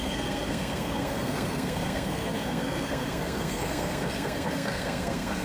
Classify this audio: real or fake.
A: fake